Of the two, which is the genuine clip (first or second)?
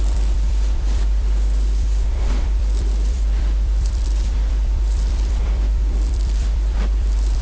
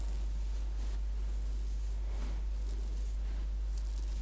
second